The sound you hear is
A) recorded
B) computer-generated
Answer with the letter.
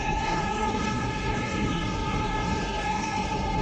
B